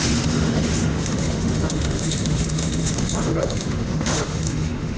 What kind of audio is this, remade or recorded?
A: remade